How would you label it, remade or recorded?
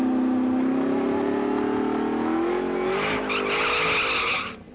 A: recorded